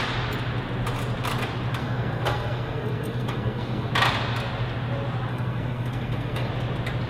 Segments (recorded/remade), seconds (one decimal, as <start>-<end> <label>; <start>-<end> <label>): 0.0-1.8 recorded; 1.8-3.9 remade; 3.9-5.3 recorded; 5.3-6.5 remade; 6.5-7.1 recorded